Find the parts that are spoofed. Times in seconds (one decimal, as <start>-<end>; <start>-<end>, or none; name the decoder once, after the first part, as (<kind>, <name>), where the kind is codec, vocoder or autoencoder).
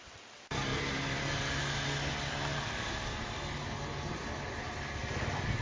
none